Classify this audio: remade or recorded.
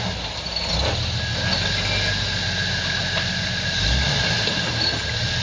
recorded